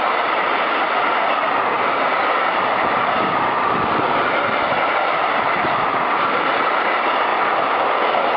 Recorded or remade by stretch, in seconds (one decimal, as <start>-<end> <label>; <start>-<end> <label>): 0.0-8.4 recorded